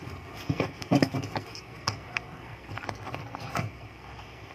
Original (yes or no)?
no